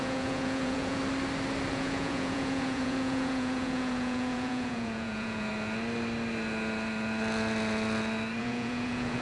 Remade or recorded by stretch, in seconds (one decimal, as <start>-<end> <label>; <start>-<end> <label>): 0.0-1.0 remade; 1.0-1.7 recorded; 1.7-5.5 remade; 5.5-8.4 recorded; 8.4-9.2 remade